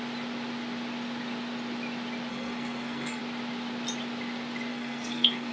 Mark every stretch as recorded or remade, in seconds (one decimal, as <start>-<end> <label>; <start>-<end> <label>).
0.0-2.3 recorded; 2.3-3.2 remade; 3.2-4.7 recorded; 4.7-5.5 remade